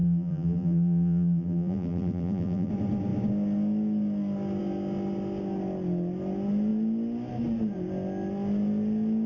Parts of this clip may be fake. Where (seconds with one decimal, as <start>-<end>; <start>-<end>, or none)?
0.0-2.7